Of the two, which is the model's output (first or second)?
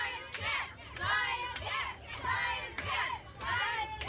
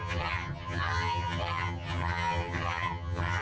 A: second